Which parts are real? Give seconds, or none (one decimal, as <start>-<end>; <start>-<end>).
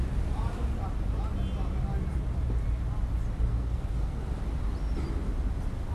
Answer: 0.0-3.5; 4.2-5.9